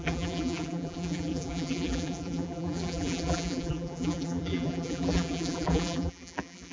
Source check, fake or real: fake